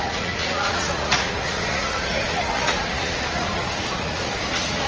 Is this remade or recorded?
remade